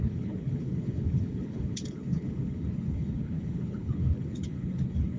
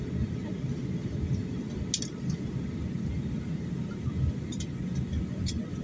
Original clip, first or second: second